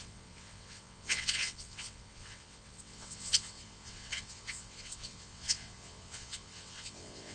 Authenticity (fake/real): fake